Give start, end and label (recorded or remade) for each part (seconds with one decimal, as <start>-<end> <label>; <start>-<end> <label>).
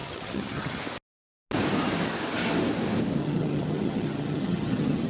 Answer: 0.0-0.8 remade; 0.8-3.2 recorded; 3.2-5.1 remade